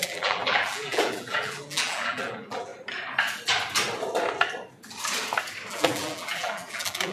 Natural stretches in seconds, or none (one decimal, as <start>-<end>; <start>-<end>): 2.7-5.7